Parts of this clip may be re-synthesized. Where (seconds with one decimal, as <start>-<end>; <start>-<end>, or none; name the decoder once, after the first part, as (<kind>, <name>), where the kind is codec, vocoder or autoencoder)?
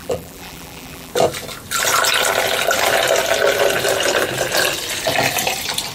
0.0-1.1 (vocoder, BigVGAN v2)